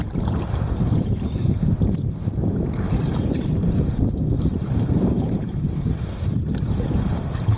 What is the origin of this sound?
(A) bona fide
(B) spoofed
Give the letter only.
B